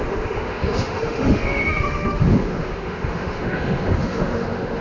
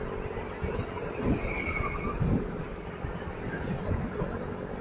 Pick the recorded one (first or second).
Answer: second